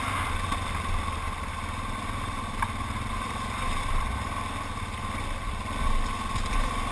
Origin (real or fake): real